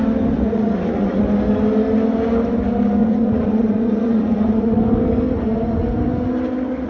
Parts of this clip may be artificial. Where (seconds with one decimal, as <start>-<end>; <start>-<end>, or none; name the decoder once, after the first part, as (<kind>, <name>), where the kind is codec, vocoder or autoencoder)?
0.5-1.2 (vocoder, Vocos); 3.0-4.8